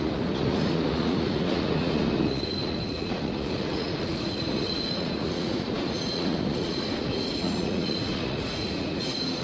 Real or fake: fake